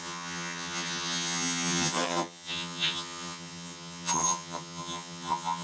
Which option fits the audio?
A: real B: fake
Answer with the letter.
B